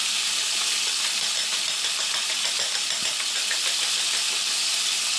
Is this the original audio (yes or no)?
yes